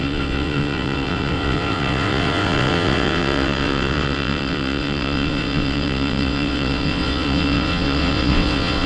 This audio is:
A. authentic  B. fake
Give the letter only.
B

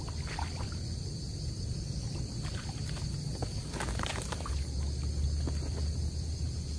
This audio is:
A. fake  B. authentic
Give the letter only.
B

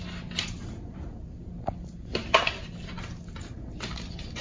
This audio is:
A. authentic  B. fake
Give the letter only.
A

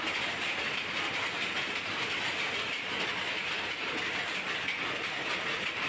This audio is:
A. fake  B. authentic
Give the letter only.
B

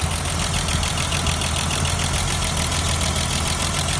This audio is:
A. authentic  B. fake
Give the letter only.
A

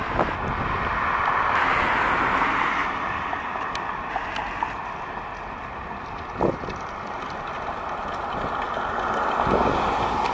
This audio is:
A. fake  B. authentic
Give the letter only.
B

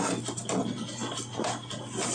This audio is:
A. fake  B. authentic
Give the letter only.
B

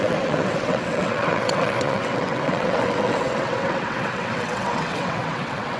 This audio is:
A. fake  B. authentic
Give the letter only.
A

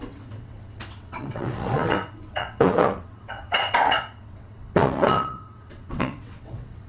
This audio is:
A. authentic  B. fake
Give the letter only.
B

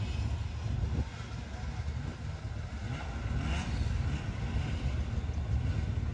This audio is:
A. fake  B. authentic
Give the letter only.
B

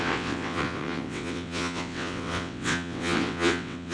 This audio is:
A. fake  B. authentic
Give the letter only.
A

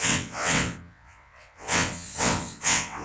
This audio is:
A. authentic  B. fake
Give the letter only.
B